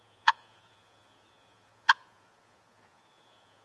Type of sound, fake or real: fake